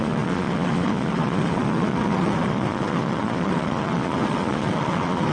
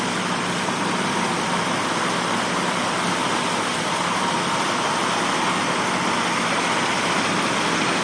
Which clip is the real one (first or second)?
second